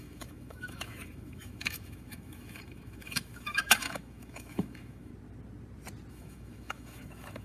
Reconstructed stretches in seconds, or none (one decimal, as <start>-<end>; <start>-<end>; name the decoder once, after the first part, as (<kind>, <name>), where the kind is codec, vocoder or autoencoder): 0.0-5.1 (autoencoder, DAC-VAE); 6.1-7.4